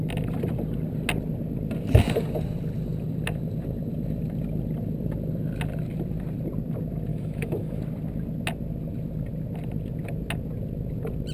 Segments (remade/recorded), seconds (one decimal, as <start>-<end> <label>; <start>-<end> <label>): 0.0-7.1 recorded; 7.1-7.8 remade; 7.8-11.3 recorded